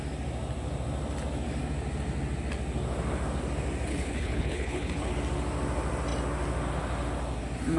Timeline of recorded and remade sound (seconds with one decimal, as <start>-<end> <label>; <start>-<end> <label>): 0.0-3.9 recorded; 3.9-5.1 remade; 5.1-7.8 recorded